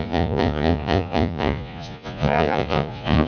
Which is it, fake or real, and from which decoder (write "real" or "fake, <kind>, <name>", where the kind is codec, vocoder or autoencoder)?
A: fake, vocoder, Vocos